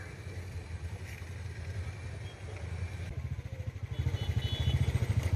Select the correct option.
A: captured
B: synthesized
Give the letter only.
A